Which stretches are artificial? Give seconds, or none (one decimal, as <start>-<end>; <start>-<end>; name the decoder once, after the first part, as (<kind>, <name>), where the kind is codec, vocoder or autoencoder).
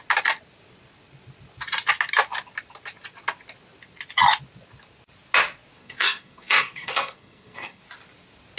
5.8-7.8 (codec, SNAC)